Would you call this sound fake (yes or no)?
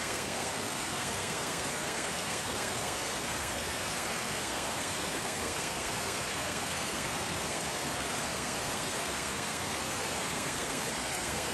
yes